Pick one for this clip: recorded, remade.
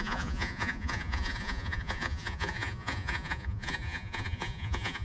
remade